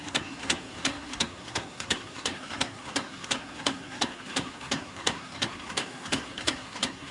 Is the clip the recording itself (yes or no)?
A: no